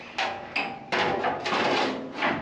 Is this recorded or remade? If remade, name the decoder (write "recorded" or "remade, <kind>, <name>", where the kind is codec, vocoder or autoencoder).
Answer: recorded